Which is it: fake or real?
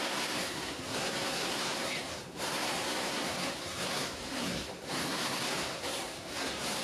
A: fake